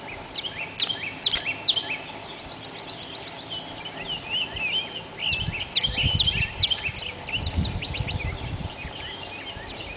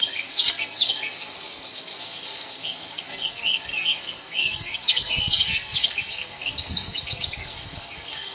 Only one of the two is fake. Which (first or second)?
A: second